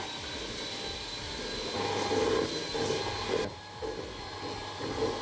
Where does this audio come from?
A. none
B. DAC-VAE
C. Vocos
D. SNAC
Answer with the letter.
A